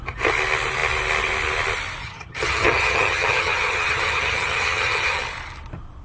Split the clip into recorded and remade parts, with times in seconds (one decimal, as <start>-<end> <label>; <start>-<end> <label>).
0.0-2.0 recorded; 2.0-5.2 remade; 5.2-6.0 recorded